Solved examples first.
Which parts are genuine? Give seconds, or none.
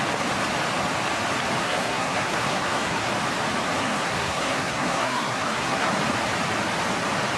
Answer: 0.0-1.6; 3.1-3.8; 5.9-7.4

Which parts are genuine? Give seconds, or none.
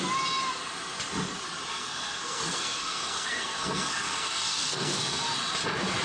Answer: 0.0-1.7; 5.3-6.0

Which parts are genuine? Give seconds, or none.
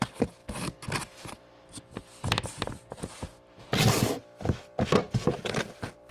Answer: 0.0-6.1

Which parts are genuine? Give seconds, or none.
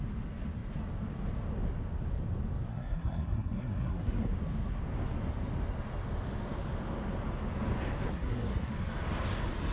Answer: 0.0-2.7; 4.3-8.1; 8.7-9.7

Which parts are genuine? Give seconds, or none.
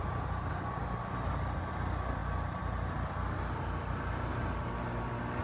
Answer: 0.0-5.4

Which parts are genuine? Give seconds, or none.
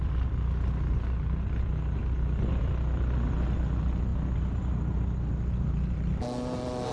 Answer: 0.0-6.9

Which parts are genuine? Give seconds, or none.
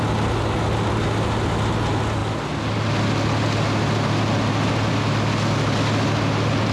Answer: 0.0-6.7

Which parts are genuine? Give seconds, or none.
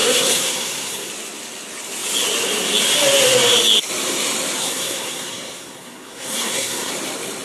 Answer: 1.1-4.6; 6.9-7.4